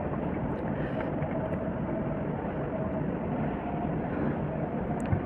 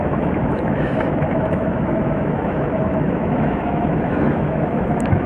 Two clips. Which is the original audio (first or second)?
first